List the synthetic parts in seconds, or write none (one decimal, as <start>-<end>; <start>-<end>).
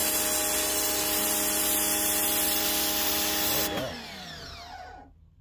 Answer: none